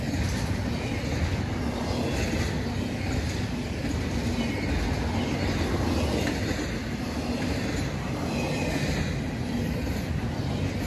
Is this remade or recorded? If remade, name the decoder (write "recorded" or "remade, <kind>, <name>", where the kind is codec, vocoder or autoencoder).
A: recorded